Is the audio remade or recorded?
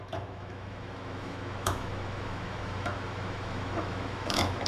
remade